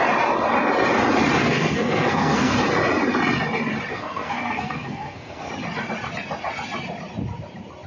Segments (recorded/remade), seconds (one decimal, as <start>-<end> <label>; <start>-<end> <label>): 0.0-1.4 recorded; 1.4-2.5 remade; 2.5-3.9 recorded; 3.9-5.5 remade; 5.5-7.9 recorded